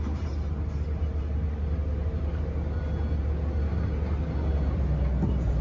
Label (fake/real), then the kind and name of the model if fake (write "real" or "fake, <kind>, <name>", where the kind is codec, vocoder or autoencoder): real